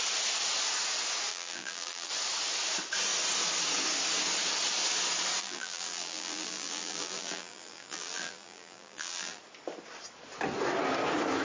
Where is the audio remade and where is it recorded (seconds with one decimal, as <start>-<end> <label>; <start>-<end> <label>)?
0.0-1.3 recorded; 1.3-2.1 remade; 2.1-5.4 recorded; 5.4-9.4 remade; 9.4-11.4 recorded